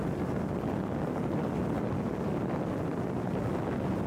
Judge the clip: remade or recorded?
recorded